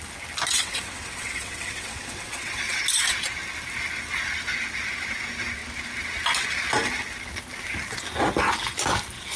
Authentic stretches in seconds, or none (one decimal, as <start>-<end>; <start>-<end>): 0.0-0.5; 2.8-9.4